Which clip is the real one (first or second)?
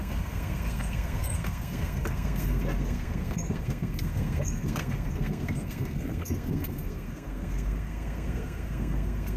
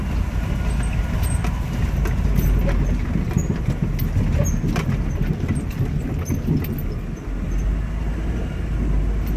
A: second